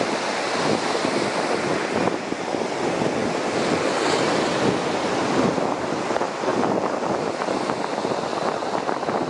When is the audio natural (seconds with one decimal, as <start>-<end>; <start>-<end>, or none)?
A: 0.0-6.5; 7.4-8.6